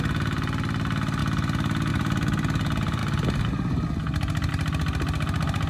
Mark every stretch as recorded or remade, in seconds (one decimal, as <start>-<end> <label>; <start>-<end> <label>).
0.0-5.7 recorded